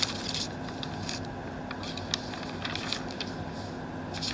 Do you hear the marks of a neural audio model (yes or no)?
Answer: no